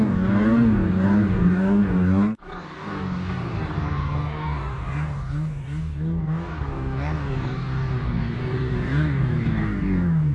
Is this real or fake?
fake